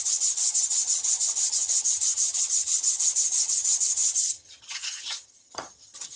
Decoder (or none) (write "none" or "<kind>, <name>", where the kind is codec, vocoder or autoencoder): vocoder, HiFi-GAN